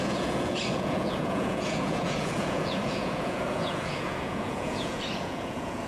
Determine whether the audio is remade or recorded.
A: remade